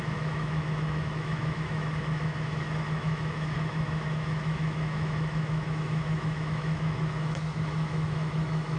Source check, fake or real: fake